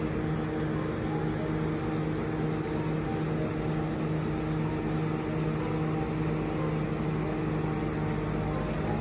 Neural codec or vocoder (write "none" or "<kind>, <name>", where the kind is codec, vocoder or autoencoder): none